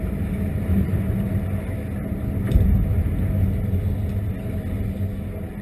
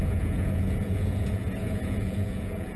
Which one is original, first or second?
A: first